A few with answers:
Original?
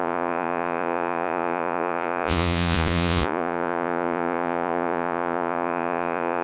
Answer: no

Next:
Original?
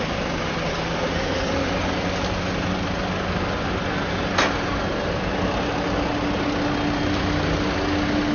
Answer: yes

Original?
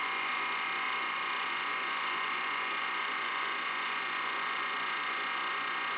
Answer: no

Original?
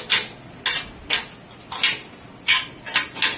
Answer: yes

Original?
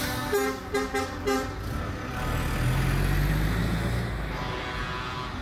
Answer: yes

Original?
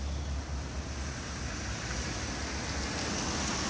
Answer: yes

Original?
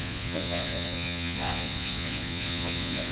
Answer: no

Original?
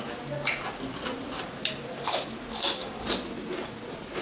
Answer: yes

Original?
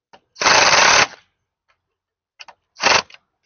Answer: yes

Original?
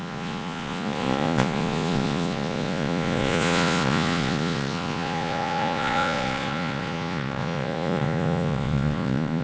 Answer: no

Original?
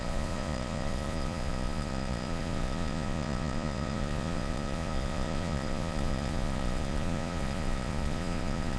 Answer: no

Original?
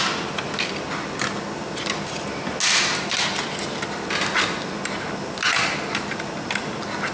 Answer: yes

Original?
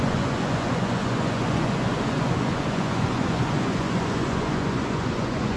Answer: no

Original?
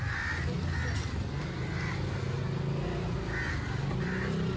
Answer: yes